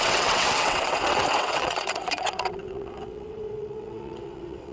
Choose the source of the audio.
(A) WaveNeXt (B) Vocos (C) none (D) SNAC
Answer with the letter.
A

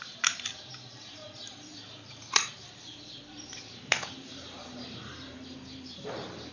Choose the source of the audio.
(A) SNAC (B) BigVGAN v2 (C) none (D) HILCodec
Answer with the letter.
B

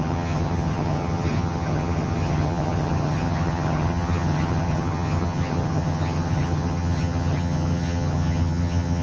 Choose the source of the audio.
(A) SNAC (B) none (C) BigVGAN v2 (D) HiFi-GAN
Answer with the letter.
D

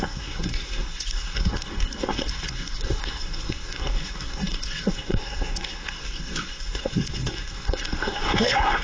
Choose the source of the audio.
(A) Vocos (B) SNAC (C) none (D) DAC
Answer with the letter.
B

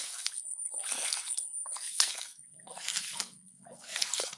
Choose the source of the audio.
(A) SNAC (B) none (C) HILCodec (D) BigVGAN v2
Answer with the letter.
A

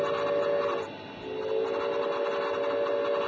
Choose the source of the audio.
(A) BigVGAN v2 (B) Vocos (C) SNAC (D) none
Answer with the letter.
D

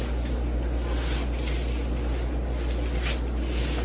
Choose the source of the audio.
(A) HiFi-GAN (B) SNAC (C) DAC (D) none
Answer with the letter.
D